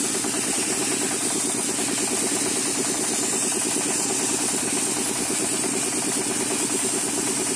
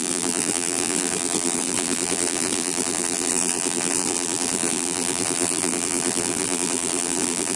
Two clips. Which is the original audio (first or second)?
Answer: first